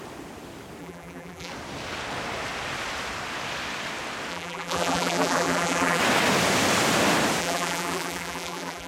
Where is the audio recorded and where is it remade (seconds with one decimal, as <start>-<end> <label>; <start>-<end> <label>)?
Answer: 0.0-0.8 recorded; 0.8-1.5 remade; 1.5-4.3 recorded; 4.3-6.0 remade; 6.0-7.4 recorded; 7.4-8.9 remade

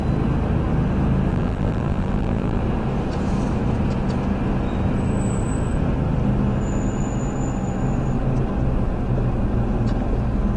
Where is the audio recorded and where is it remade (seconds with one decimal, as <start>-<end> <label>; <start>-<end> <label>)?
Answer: 0.0-1.3 recorded; 1.3-2.6 remade; 2.6-10.6 recorded

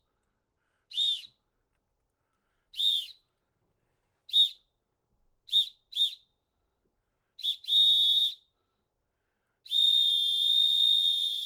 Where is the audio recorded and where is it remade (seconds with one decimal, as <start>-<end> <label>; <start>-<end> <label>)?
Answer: 0.0-7.4 recorded; 7.4-8.2 remade; 8.2-11.5 recorded

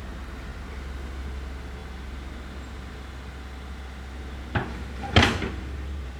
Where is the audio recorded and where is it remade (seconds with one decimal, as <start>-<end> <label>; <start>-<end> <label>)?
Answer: 0.0-4.6 recorded; 4.6-6.2 remade

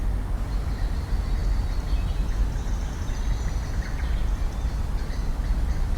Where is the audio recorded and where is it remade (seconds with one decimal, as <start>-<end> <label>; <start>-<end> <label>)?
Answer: 0.0-6.0 recorded

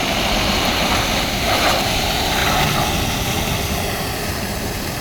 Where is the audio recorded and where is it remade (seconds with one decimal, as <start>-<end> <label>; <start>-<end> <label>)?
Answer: 0.0-2.4 remade; 2.4-3.8 recorded; 3.8-5.0 remade

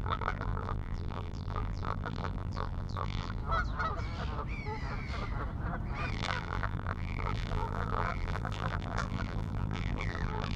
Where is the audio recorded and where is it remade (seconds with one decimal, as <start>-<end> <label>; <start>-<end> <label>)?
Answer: 0.0-3.4 remade; 3.4-6.1 recorded; 6.1-10.6 remade

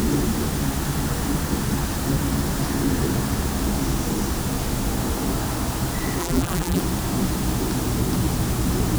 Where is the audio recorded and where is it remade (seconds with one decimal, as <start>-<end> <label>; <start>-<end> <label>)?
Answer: 0.0-6.2 recorded; 6.2-6.8 remade; 6.8-9.0 recorded